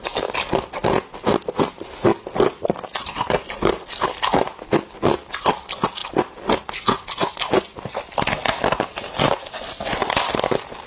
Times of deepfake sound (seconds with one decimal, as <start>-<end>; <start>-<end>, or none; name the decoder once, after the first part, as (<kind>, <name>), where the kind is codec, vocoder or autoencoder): none